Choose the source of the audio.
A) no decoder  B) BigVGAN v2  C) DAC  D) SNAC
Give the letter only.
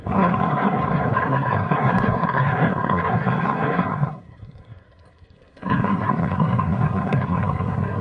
D